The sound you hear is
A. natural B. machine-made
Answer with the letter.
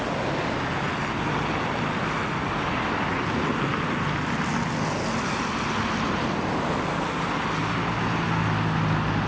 A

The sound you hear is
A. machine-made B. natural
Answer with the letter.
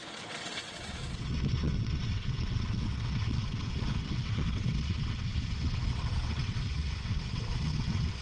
A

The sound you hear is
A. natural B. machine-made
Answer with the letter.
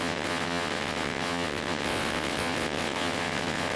B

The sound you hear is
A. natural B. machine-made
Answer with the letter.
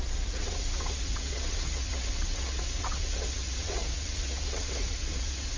B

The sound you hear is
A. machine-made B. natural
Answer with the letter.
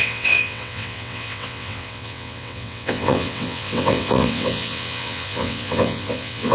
A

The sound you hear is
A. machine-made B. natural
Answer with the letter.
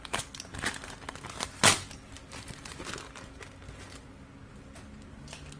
B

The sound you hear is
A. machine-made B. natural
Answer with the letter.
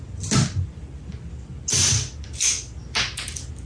B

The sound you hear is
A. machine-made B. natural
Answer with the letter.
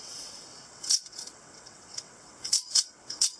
A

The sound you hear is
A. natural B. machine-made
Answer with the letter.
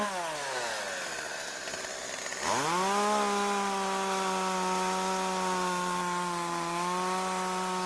A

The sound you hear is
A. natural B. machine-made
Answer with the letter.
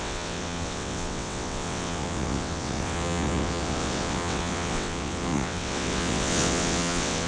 B